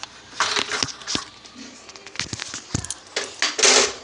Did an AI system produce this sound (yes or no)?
no